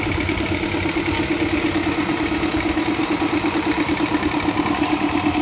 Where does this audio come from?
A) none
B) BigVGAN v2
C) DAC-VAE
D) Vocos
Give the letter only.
A